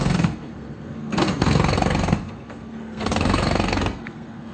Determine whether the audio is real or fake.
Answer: fake